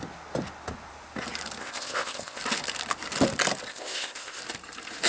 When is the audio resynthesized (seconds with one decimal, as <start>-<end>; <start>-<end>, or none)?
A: 1.6-2.4; 3.7-4.4

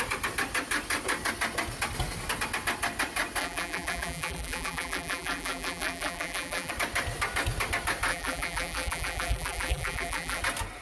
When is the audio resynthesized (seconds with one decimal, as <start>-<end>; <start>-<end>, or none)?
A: 3.4-6.7; 8.1-10.4

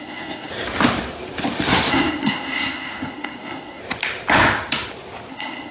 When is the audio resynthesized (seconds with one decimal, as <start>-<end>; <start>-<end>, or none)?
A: 0.0-0.5; 1.9-3.8; 5.3-5.7

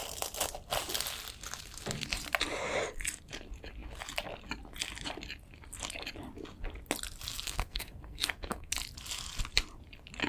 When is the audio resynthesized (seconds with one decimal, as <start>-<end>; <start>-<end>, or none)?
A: 7.3-8.7

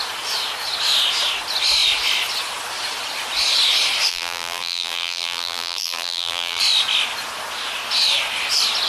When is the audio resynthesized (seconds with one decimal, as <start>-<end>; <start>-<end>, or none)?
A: 4.1-6.6

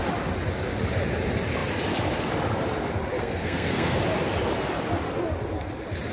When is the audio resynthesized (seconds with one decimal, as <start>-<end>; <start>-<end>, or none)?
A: 3.2-4.0

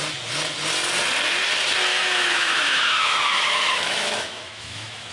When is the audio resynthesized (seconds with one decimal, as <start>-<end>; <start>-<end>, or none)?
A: 1.9-5.1

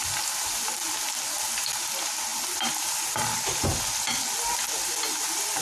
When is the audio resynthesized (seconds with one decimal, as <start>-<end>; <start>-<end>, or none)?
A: none